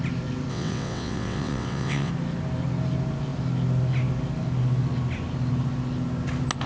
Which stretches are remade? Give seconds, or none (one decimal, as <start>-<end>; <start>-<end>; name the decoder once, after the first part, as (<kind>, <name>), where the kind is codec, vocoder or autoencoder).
0.5-2.1 (vocoder, WaveNeXt)